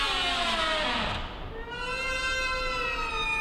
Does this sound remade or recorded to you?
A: recorded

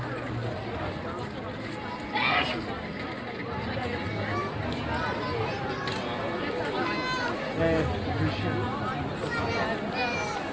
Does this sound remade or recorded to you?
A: recorded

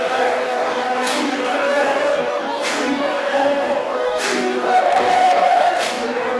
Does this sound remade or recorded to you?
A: remade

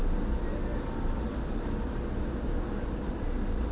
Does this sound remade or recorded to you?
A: recorded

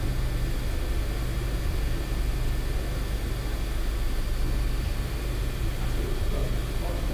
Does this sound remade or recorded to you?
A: recorded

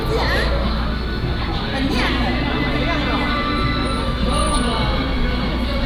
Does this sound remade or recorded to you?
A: recorded